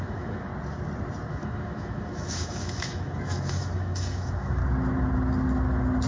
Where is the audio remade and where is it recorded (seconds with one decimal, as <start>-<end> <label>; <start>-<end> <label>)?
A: 0.0-0.5 remade; 0.5-1.3 recorded; 1.3-4.6 remade; 4.6-6.1 recorded